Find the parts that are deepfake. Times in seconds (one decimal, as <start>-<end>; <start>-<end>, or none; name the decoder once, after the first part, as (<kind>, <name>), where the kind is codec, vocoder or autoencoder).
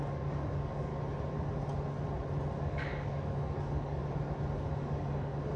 0.0-0.9 (codec, DAC); 2.6-4.0; 4.7-5.6